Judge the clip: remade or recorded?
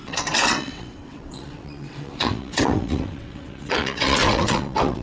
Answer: remade